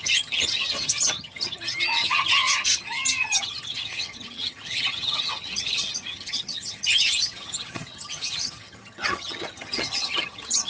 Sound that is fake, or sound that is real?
fake